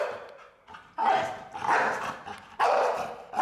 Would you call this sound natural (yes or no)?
no